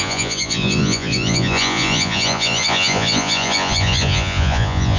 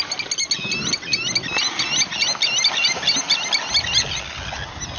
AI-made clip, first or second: first